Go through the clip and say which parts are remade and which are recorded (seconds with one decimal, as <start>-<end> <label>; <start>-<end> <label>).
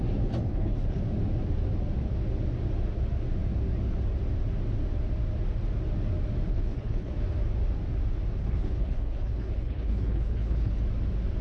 0.0-0.5 recorded; 0.5-1.0 remade; 1.0-6.5 recorded; 6.5-7.1 remade; 7.1-8.4 recorded; 8.4-10.8 remade; 10.8-11.4 recorded